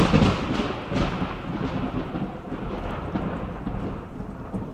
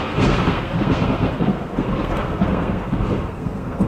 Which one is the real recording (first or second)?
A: first